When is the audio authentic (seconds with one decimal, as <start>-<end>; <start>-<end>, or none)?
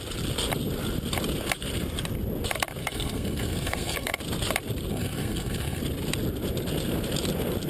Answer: 0.0-2.8; 4.2-4.9; 5.8-7.7